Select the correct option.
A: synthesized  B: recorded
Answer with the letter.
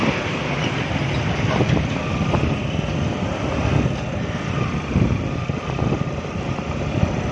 B